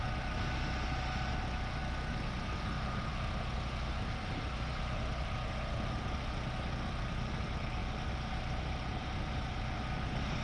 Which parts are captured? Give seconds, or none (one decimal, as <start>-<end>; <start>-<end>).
0.0-10.4

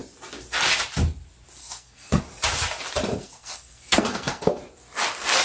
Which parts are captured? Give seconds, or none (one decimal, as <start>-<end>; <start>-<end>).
0.0-1.6; 2.2-3.2; 4.6-5.4

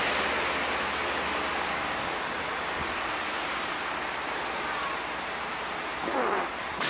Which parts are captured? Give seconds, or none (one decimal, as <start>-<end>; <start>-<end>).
0.0-5.9; 6.5-6.9

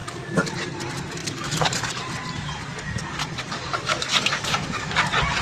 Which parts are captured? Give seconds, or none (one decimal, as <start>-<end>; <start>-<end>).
0.5-1.2; 2.0-2.7; 5.0-5.4

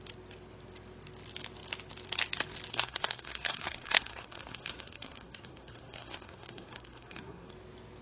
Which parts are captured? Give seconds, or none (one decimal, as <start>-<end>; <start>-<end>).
0.0-2.7; 7.5-8.0